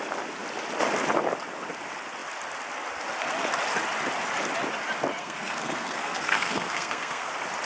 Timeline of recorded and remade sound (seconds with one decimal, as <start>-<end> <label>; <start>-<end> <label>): 0.0-5.2 recorded; 5.2-7.3 remade; 7.3-7.7 recorded